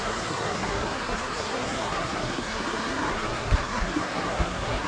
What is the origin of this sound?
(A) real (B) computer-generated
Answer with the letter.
B